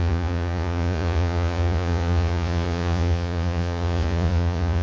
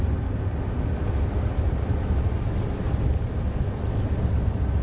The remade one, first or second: first